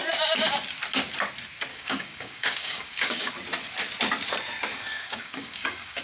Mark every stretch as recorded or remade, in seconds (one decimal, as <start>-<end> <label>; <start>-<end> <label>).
0.0-1.7 recorded; 1.7-3.3 remade; 3.3-4.7 recorded; 4.7-6.0 remade